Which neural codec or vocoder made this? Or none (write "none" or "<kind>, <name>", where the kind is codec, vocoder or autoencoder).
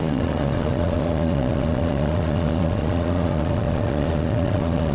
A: vocoder, Vocos